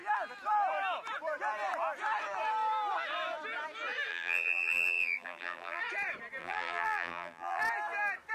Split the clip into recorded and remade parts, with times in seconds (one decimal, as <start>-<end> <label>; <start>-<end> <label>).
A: 0.0-4.1 recorded; 4.1-5.8 remade; 5.8-6.4 recorded; 6.4-7.6 remade; 7.6-8.3 recorded